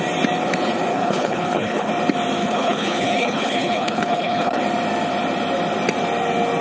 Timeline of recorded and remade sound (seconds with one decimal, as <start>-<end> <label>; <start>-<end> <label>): 0.0-0.9 recorded; 0.9-1.9 remade; 1.9-2.4 recorded; 2.4-4.6 remade; 4.6-6.6 recorded